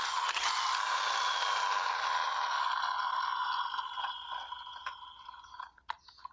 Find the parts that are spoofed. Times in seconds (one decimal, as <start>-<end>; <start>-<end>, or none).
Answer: none